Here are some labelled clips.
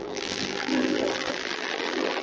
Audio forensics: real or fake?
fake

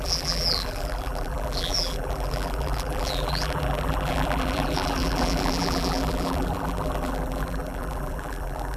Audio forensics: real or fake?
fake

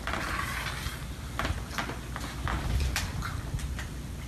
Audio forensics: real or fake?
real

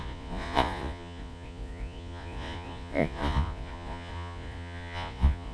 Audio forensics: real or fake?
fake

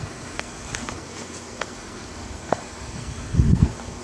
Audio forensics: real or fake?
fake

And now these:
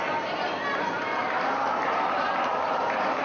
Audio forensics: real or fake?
real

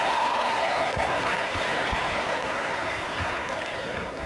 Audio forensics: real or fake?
fake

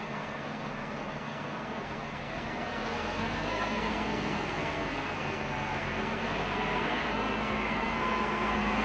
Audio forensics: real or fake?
fake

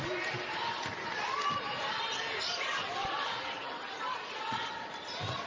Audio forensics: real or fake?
real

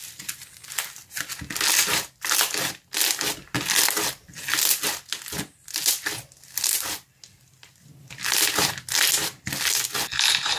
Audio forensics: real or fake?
real